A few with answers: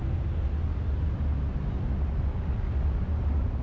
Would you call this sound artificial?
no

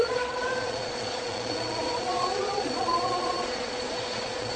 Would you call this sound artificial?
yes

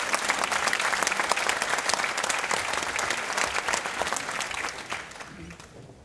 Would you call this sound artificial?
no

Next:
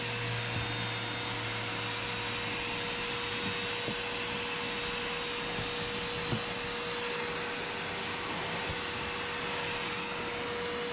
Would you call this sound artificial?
no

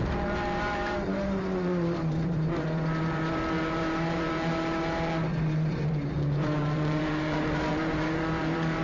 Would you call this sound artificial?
yes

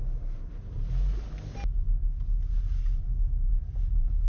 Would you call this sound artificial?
no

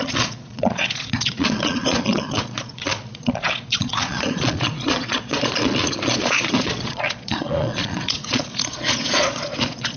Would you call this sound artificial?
yes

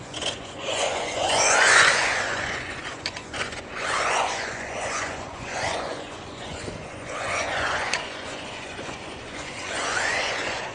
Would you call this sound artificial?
yes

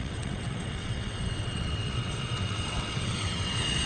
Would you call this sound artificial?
yes